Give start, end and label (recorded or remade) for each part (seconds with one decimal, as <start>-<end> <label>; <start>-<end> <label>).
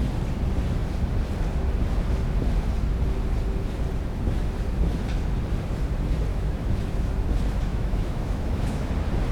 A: 0.0-6.3 recorded; 6.3-7.1 remade; 7.1-7.7 recorded; 7.7-8.9 remade; 8.9-9.3 recorded